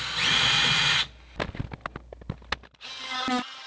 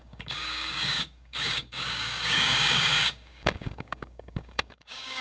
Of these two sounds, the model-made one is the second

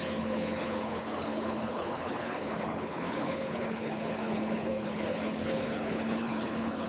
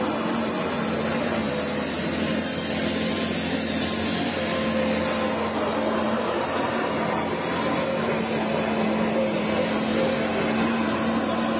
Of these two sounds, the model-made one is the first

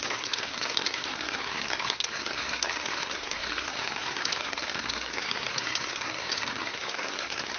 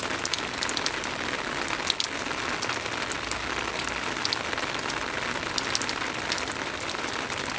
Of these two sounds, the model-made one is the first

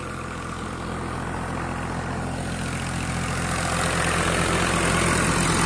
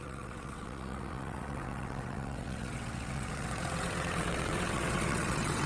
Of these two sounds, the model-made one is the second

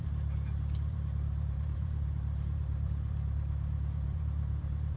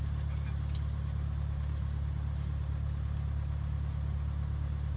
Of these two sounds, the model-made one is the first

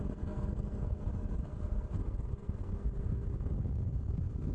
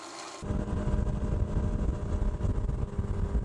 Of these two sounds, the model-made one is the first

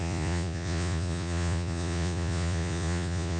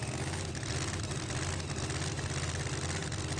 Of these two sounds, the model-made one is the first